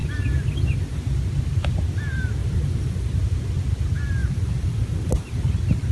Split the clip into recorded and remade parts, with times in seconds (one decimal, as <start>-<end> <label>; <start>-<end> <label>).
0.0-1.0 remade; 1.0-2.4 recorded; 2.4-3.2 remade; 3.2-4.2 recorded; 4.2-5.4 remade; 5.4-5.9 recorded

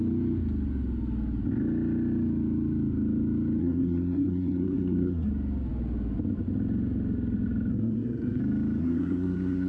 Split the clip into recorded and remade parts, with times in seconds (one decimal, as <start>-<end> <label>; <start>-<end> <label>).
0.0-3.6 recorded; 3.6-5.3 remade; 5.3-7.7 recorded; 7.7-8.4 remade; 8.4-8.8 recorded; 8.8-9.7 remade

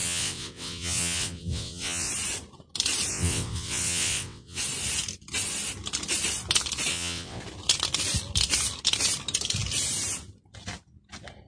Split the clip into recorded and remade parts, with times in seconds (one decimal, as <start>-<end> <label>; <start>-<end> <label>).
0.0-2.1 remade; 2.1-3.1 recorded; 3.1-4.6 remade; 4.6-6.9 recorded; 6.9-7.4 remade; 7.4-11.5 recorded

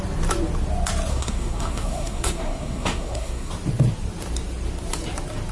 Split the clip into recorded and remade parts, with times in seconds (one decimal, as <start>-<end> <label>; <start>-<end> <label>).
0.0-1.1 recorded; 1.1-3.5 remade; 3.5-5.5 recorded

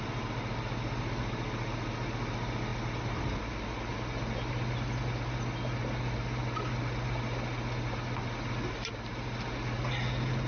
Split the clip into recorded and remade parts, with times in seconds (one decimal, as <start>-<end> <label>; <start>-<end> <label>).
0.0-10.5 recorded